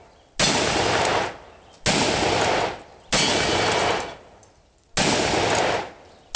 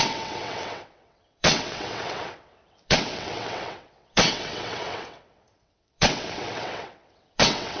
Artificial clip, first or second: second